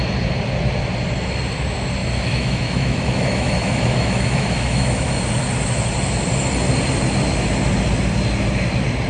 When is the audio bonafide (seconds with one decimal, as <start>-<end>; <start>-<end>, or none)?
0.0-2.0; 5.2-9.1